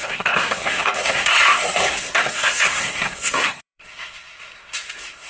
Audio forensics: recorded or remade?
remade